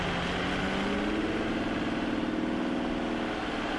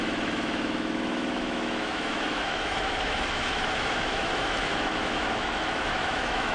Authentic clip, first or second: first